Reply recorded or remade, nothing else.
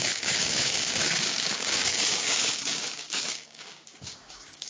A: remade